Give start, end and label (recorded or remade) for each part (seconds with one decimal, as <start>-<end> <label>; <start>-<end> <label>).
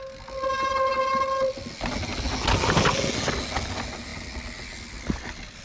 0.0-5.6 recorded